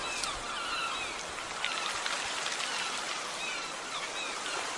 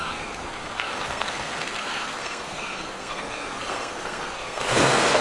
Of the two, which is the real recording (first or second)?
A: first